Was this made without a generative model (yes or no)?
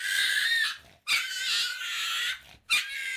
yes